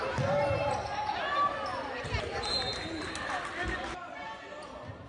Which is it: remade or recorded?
recorded